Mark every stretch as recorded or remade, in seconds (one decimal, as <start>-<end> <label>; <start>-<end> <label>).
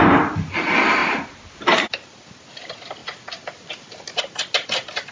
0.0-1.0 recorded; 1.0-2.5 remade; 2.5-3.0 recorded; 3.0-4.2 remade; 4.2-5.1 recorded